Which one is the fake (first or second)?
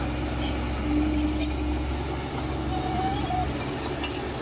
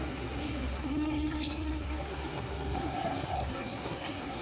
second